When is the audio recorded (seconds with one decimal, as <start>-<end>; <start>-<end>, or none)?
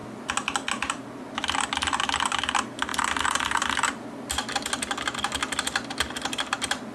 0.0-2.9; 4.3-6.9